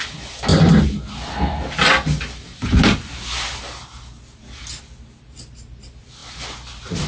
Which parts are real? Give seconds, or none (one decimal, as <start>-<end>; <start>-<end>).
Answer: 0.0-7.1